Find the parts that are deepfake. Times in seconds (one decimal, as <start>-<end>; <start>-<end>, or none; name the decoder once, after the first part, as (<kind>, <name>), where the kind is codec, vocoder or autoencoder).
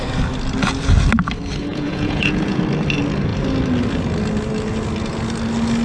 1.7-2.6 (vocoder, Vocos)